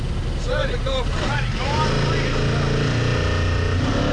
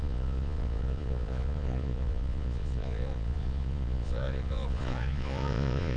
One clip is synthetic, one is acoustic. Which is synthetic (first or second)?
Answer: second